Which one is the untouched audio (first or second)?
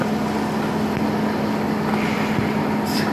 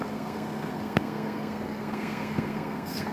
first